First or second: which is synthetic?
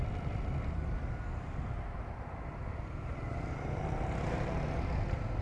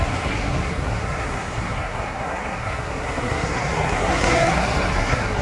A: second